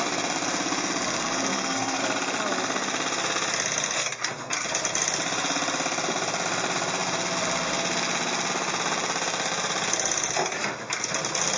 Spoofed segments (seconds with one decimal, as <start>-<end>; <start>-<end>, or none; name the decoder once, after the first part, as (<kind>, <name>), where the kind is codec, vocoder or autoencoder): 1.5-2.0 (codec, SNAC)